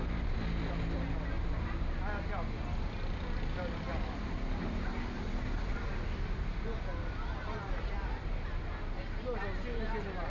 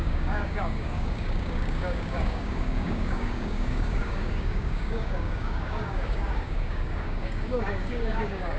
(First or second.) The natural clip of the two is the first